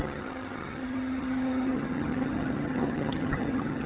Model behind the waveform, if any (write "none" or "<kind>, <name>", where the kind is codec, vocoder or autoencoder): vocoder, HiFi-GAN